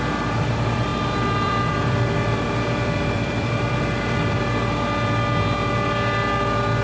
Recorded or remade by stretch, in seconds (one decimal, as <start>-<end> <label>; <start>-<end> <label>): 0.0-0.9 recorded; 0.9-4.4 remade; 4.4-6.8 recorded